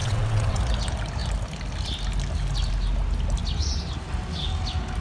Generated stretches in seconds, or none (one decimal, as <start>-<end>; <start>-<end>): 0.0-0.6